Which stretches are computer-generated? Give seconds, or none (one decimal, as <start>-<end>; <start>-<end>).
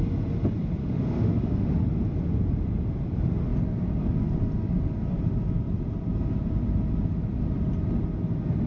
0.8-1.7